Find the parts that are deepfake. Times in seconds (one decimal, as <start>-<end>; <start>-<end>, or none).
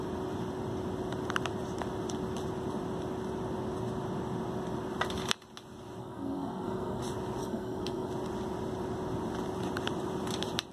6.0-7.0; 7.4-8.1